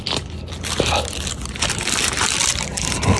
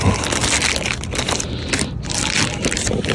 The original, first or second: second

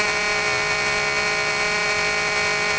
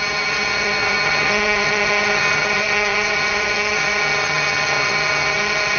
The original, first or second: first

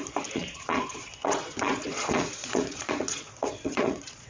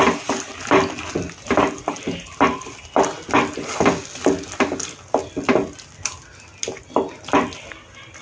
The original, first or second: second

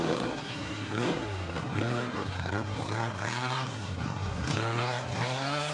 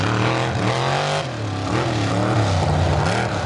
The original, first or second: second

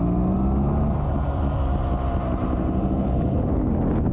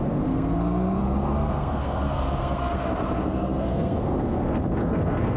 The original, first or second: first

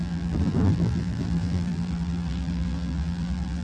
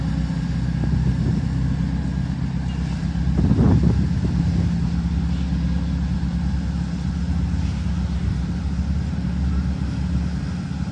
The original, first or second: second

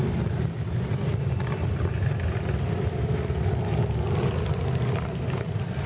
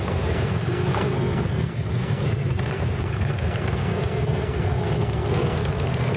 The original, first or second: first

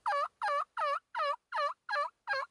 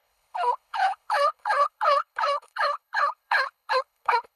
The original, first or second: first